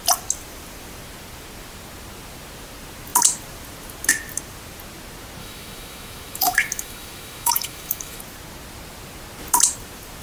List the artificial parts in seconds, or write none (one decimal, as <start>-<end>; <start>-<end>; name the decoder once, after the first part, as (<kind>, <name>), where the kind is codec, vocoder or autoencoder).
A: 5.4-8.2 (autoencoder, DAC-VAE)